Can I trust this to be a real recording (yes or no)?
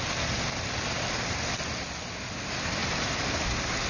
yes